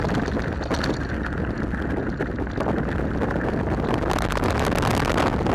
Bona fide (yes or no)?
yes